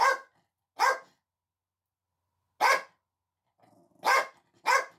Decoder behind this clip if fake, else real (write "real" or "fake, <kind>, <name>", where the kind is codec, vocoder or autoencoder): real